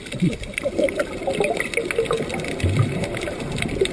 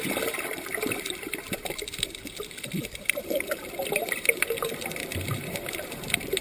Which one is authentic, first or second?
first